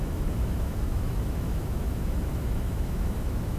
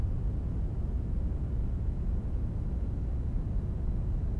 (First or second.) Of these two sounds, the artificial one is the first